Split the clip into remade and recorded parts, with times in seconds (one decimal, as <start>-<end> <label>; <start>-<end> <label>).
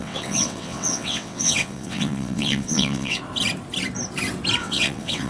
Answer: 0.0-3.2 remade; 3.2-4.6 recorded; 4.6-5.3 remade